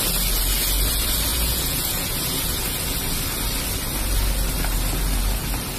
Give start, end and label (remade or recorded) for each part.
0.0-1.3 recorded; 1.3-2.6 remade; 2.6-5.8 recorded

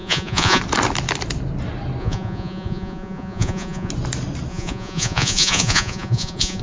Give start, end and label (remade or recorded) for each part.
0.0-0.6 remade; 0.6-2.0 recorded; 2.0-3.9 remade; 3.9-4.5 recorded; 4.5-6.6 remade